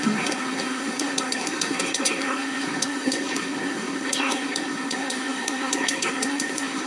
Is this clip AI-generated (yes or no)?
yes